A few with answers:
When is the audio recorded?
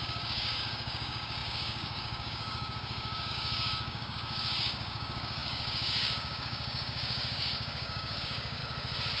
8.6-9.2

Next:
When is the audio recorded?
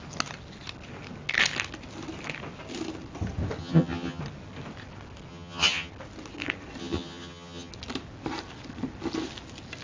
0.0-3.6; 4.2-5.3; 5.9-6.8; 7.7-9.8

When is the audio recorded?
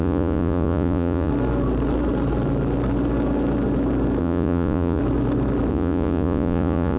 1.3-4.2; 5.0-5.7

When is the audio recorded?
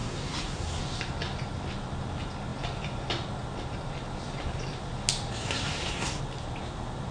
0.8-5.4; 6.2-7.1